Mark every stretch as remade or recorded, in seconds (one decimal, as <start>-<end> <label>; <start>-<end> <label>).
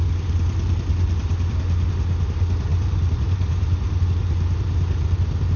0.0-2.7 recorded; 2.7-4.0 remade; 4.0-5.6 recorded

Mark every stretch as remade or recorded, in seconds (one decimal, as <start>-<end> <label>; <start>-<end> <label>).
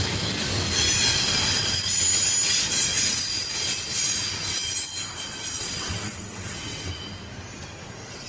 0.0-5.6 recorded; 5.6-6.9 remade; 6.9-8.3 recorded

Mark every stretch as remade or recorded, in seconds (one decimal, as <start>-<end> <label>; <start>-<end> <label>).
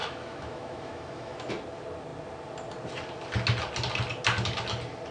0.0-1.5 remade; 1.5-5.1 recorded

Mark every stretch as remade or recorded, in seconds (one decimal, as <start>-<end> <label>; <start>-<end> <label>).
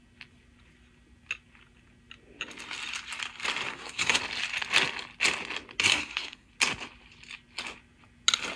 0.0-3.7 recorded; 3.7-4.2 remade; 4.2-5.9 recorded; 5.9-6.5 remade; 6.5-8.6 recorded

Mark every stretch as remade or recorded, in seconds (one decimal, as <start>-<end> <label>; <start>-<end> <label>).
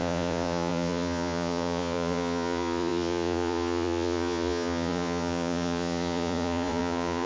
0.0-7.3 remade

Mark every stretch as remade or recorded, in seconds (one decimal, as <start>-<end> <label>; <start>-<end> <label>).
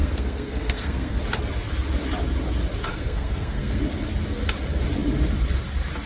0.0-1.2 remade; 1.2-2.9 recorded; 2.9-3.8 remade; 3.8-6.1 recorded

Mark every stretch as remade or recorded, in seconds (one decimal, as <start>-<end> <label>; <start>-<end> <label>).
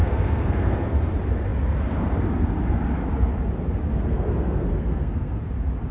0.0-1.0 remade; 1.0-3.8 recorded; 3.8-5.4 remade; 5.4-5.9 recorded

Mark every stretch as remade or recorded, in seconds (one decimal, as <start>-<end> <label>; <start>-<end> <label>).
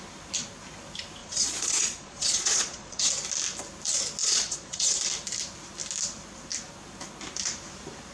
0.0-1.2 recorded; 1.2-3.1 remade; 3.1-4.2 recorded; 4.2-4.9 remade; 4.9-8.1 recorded